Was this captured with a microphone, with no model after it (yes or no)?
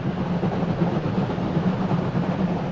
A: yes